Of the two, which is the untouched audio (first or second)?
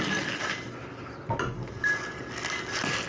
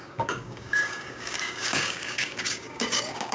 first